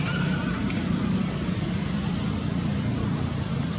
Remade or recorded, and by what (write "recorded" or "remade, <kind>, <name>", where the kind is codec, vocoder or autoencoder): recorded